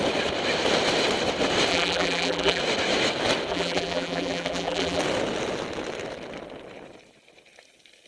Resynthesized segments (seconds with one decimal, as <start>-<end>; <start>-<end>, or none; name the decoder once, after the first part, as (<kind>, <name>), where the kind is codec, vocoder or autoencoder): 1.7-2.6 (vocoder, BigVGAN v2); 3.5-5.0